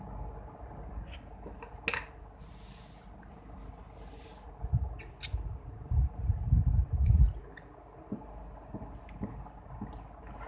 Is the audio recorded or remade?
recorded